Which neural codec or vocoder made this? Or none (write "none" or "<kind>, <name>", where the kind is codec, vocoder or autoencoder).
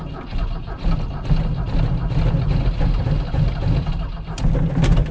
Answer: none